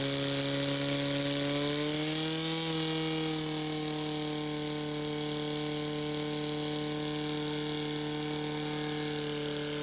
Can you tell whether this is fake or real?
real